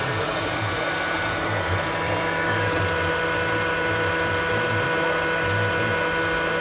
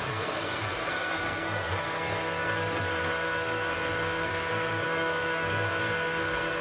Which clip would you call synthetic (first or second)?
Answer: second